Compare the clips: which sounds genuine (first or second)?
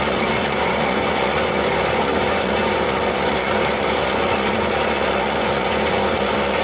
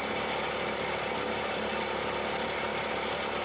second